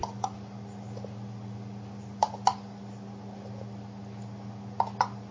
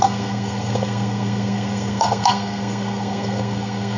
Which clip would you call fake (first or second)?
second